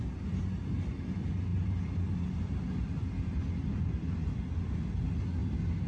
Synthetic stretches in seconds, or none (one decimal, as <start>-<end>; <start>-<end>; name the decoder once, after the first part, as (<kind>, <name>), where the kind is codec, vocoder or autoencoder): 1.5-3.1 (vocoder, BigVGAN v2)